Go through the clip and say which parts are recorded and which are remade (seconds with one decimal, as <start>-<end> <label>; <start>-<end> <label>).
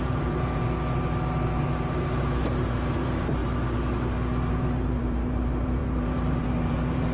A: 0.0-0.6 remade; 0.6-1.6 recorded; 1.6-3.4 remade; 3.4-4.5 recorded; 4.5-7.1 remade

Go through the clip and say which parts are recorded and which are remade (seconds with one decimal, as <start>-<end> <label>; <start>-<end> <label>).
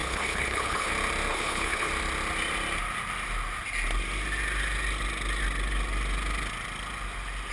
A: 0.0-0.9 remade; 0.9-1.3 recorded; 1.3-1.9 remade; 1.9-7.5 recorded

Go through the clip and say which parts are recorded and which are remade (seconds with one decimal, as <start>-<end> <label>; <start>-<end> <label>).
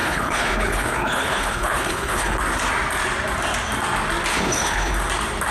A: 0.0-2.4 remade; 2.4-4.3 recorded; 4.3-4.9 remade; 4.9-5.5 recorded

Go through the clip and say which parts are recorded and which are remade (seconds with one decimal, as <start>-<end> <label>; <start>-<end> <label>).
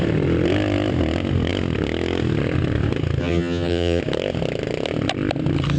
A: 0.0-3.2 recorded; 3.2-4.0 remade; 4.0-5.8 recorded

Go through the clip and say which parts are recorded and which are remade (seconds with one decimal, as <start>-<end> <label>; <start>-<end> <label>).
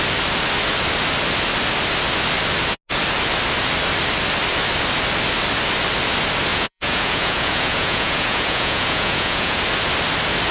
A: 0.0-6.5 recorded; 6.5-9.6 remade; 9.6-10.5 recorded